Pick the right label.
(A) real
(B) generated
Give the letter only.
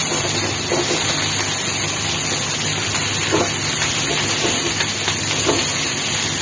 A